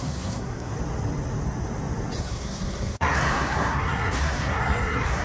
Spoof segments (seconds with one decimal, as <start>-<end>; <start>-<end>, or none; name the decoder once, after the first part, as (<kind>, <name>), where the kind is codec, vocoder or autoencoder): 0.0-0.7 (codec, SNAC); 2.2-5.2